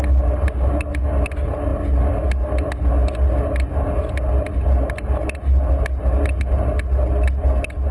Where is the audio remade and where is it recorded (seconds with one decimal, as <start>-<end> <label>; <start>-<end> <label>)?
0.0-7.9 recorded

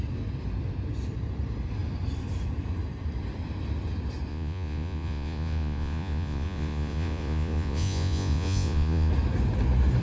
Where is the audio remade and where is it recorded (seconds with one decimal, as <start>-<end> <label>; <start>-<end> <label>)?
0.0-4.3 recorded; 4.3-9.1 remade; 9.1-10.0 recorded

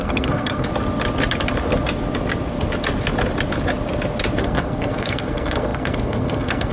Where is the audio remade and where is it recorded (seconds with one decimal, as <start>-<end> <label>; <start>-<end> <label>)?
0.0-0.7 remade; 0.7-4.4 recorded; 4.4-6.7 remade

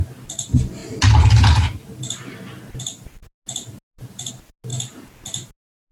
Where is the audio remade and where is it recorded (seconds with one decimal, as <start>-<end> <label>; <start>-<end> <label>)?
0.0-4.7 recorded; 4.7-5.2 remade; 5.2-5.9 recorded

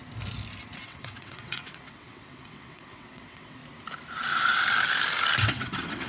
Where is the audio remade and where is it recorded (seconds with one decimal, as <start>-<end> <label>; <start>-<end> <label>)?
0.0-0.8 recorded; 0.8-3.6 remade; 3.6-5.4 recorded; 5.4-6.1 remade

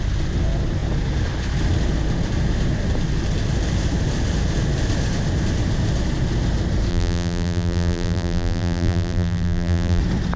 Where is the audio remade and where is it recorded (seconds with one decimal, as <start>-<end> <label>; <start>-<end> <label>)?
0.0-6.9 recorded; 6.9-10.0 remade; 10.0-10.4 recorded

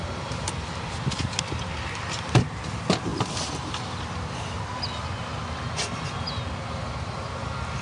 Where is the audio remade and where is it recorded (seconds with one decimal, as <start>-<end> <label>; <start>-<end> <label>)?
0.0-5.3 remade; 5.3-6.7 recorded; 6.7-7.8 remade